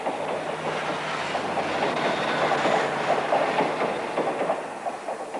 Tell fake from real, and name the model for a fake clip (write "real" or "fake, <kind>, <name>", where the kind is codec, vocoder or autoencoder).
real